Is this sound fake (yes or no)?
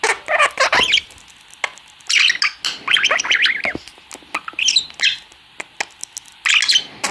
no